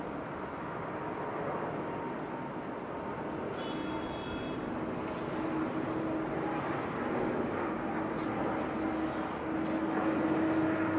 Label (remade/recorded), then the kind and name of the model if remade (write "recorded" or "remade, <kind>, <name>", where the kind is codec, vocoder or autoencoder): recorded